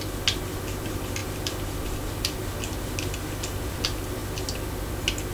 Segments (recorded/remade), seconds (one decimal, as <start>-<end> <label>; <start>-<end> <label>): 0.0-5.3 recorded